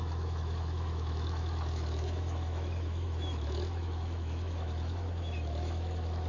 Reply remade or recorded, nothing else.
remade